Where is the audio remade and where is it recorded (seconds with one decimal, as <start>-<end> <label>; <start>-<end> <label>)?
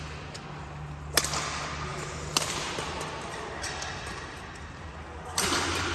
0.0-1.9 recorded; 1.9-2.7 remade; 2.7-5.9 recorded